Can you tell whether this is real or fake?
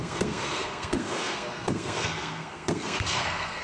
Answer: fake